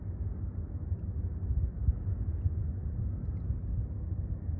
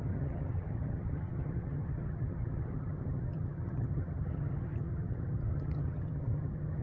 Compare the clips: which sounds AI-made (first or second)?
second